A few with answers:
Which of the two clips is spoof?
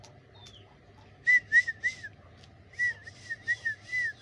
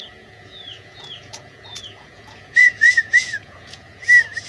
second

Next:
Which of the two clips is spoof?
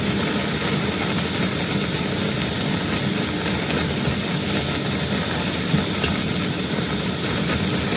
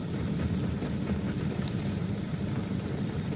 second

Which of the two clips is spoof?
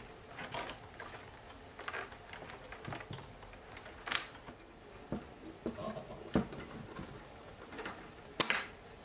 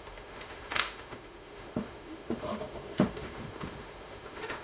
second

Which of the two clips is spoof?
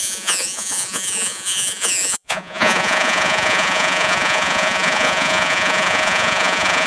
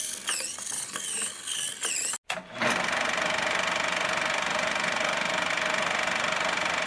first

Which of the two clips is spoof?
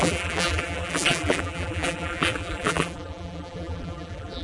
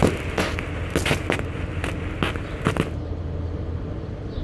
first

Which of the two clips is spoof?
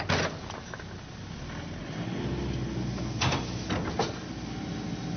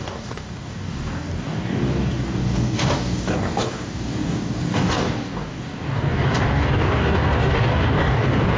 second